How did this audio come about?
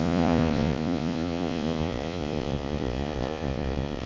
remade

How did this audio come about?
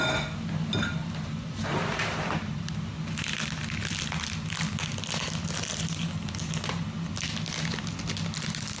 recorded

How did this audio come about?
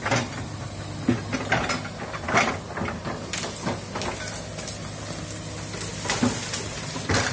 recorded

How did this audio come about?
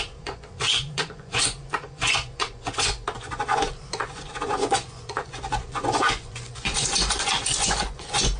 remade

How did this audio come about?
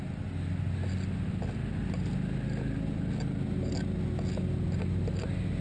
recorded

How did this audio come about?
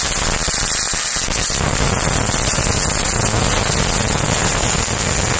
recorded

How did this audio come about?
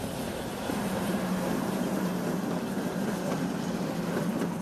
recorded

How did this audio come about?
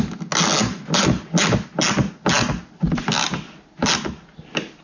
recorded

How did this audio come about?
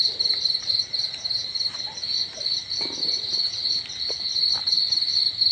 recorded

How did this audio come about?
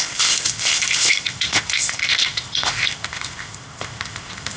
remade